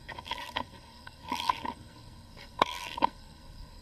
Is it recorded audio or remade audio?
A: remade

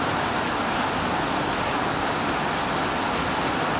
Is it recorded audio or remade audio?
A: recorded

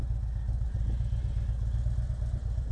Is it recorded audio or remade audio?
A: recorded